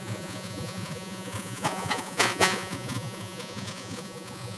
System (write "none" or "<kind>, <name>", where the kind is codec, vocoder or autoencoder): vocoder, Vocos